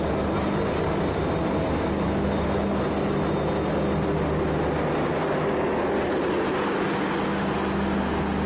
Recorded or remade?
recorded